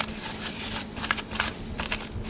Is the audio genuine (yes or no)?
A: no